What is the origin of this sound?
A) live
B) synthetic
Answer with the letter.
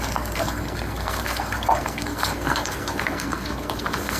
B